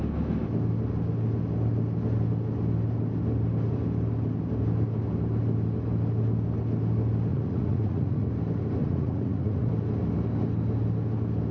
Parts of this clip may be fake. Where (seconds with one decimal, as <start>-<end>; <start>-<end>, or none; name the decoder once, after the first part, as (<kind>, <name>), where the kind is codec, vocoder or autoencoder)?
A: 7.3-8.3 (vocoder, Vocos); 8.8-9.7